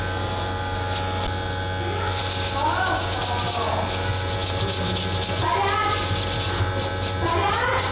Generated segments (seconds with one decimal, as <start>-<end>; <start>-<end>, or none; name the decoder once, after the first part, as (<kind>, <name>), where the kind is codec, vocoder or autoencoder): none